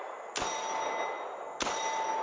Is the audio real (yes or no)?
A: yes